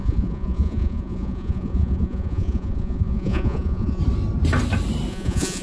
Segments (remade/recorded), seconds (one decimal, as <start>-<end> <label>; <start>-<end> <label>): 0.0-4.0 remade; 4.0-5.1 recorded; 5.1-5.6 remade